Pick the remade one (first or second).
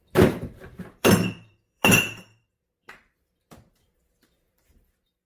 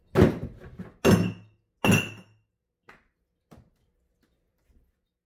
first